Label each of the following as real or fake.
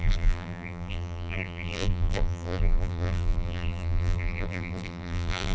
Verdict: fake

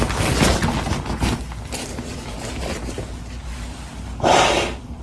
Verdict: real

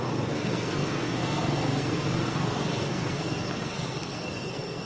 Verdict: fake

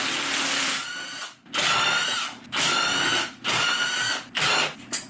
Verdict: real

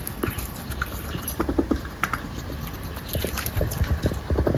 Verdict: real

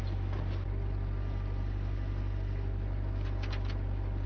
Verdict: real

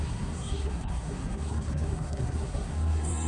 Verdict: fake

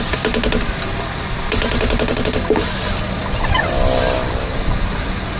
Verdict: real